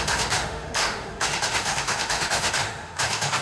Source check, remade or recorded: remade